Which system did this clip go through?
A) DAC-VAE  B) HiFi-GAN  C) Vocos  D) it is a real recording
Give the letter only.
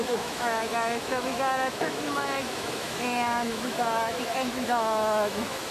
A